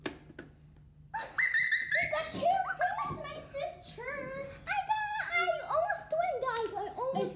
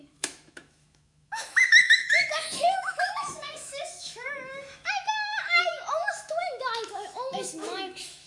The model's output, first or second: second